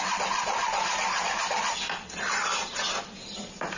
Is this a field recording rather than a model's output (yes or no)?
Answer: yes